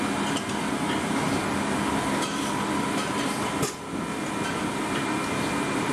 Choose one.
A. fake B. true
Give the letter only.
B